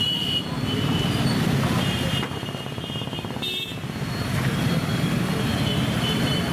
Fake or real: fake